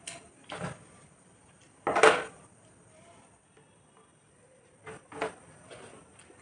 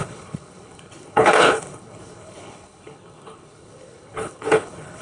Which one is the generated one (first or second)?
second